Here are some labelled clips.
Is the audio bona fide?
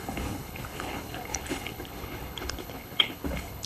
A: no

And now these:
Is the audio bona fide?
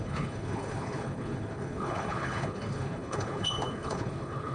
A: no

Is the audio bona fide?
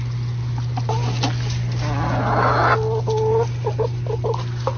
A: yes